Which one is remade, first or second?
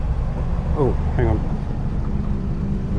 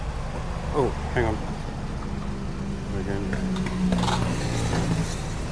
first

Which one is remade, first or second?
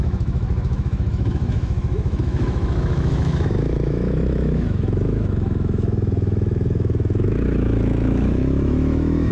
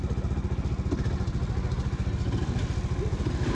first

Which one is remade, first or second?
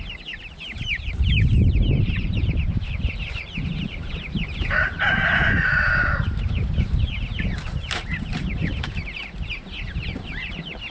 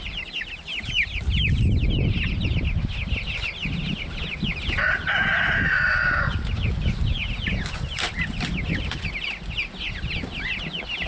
first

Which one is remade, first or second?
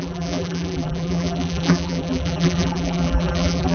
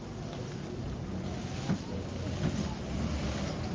first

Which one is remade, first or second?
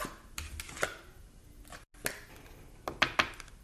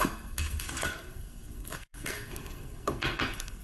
second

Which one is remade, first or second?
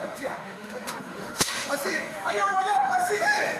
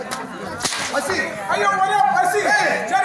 first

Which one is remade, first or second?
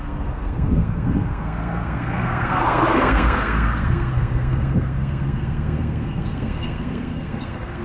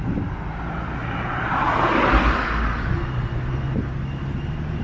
first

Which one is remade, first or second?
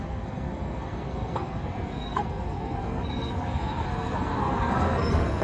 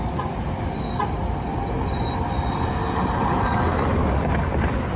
first